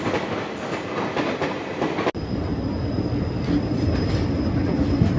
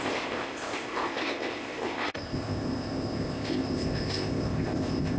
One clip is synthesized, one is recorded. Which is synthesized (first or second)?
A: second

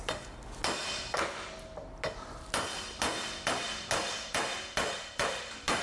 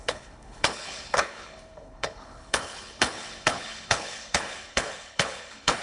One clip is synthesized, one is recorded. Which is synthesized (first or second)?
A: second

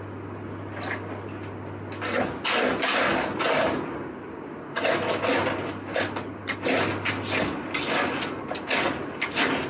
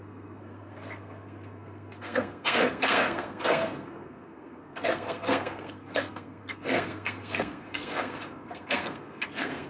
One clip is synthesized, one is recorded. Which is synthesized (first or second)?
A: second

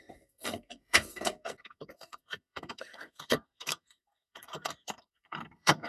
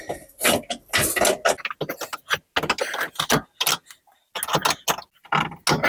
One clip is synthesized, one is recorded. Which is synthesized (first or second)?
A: first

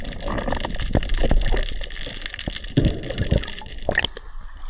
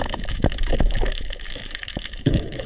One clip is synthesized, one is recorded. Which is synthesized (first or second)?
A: second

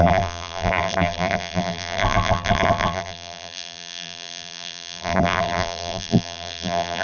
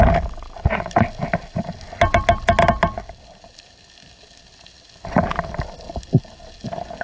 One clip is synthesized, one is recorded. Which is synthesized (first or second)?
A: first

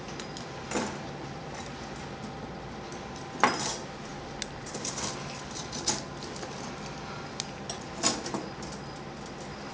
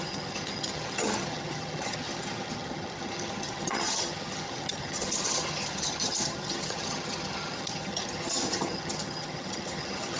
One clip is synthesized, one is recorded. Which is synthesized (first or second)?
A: second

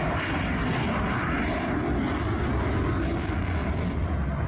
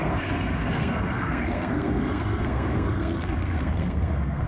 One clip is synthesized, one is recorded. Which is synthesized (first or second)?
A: second